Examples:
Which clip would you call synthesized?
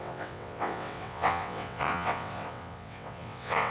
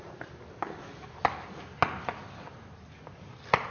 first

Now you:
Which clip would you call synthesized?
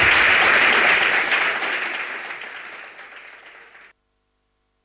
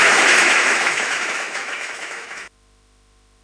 second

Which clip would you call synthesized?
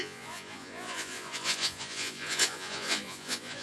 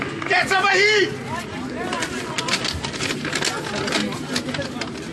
first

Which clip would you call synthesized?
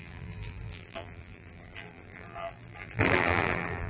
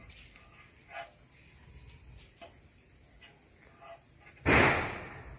first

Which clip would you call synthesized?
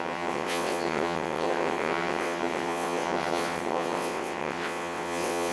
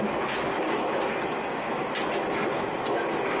first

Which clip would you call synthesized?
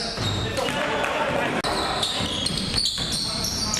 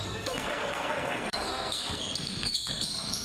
second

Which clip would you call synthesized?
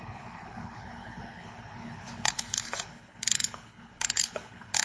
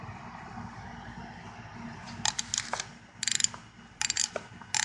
first